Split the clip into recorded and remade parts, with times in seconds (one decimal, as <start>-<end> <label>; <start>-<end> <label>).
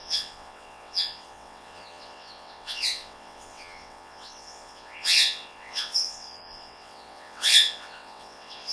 0.0-8.7 remade